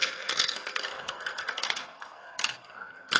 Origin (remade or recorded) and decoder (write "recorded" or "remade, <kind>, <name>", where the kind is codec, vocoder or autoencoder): remade, codec, SNAC